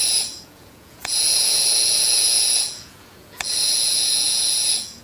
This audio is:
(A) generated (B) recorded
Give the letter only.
A